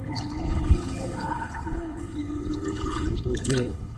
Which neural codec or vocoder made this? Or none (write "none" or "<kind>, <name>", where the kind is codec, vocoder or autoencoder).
codec, HILCodec